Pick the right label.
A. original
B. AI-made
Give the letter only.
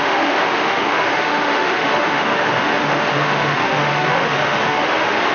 B